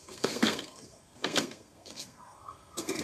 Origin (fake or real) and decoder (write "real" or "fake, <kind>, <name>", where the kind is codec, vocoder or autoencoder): fake, codec, SNAC